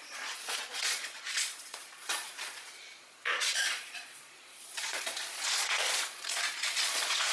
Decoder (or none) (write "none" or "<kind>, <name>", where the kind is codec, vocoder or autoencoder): vocoder, Vocos